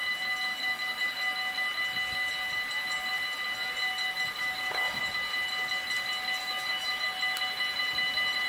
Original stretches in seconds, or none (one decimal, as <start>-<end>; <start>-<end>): 0.0-4.4; 5.0-6.4; 7.0-8.5